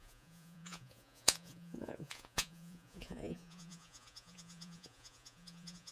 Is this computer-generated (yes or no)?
yes